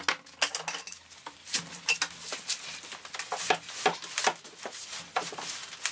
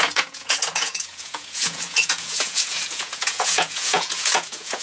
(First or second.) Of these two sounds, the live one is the first